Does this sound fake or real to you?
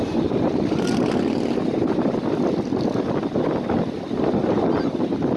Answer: real